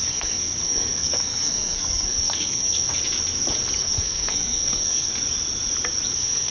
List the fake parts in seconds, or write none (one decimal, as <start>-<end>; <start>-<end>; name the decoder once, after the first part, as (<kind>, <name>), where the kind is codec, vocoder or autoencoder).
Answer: 0.0-2.9 (codec, SNAC); 3.8-5.1; 6.1-6.5